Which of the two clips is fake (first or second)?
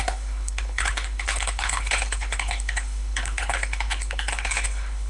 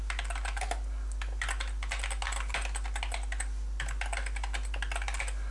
first